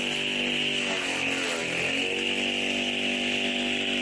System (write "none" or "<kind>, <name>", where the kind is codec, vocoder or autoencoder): none